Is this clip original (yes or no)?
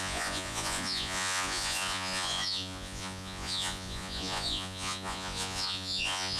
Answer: no